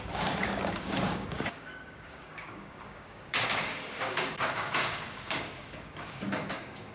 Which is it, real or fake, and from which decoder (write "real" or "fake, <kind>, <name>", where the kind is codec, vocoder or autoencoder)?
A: fake, codec, DAC